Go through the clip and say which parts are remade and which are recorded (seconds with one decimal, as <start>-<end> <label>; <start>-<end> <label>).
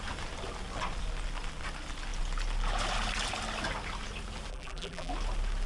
0.0-4.5 recorded; 4.5-5.1 remade; 5.1-5.7 recorded